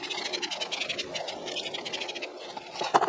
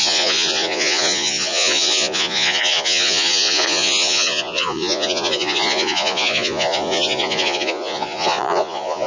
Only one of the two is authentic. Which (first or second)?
first